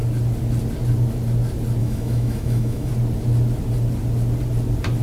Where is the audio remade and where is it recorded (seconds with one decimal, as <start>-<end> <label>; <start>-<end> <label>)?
0.0-1.8 recorded; 1.8-2.9 remade; 2.9-5.0 recorded